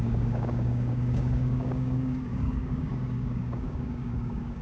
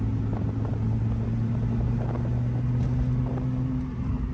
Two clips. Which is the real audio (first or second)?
second